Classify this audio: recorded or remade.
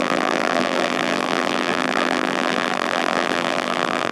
remade